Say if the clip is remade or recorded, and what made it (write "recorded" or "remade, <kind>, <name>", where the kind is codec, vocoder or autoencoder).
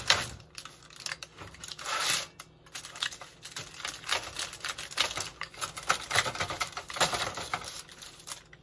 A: recorded